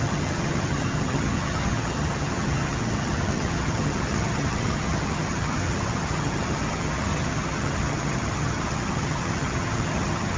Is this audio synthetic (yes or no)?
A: yes